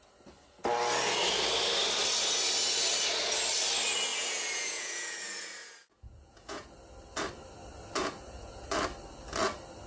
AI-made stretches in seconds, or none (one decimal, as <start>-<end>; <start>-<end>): 4.1-6.8; 8.0-8.7